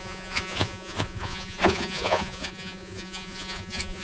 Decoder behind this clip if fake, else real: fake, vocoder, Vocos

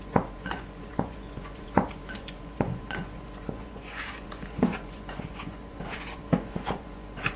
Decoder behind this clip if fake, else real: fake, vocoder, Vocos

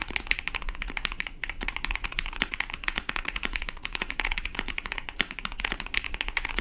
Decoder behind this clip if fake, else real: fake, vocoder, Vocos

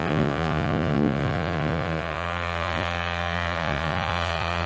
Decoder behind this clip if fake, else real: fake, vocoder, Vocos